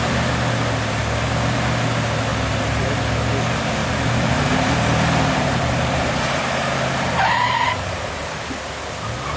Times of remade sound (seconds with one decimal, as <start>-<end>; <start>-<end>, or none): 3.8-8.5